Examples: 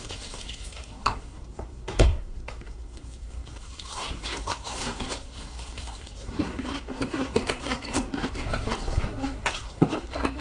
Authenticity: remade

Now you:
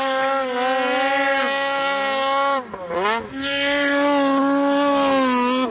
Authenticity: recorded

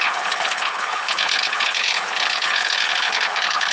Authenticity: remade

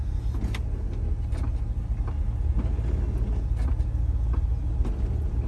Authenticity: recorded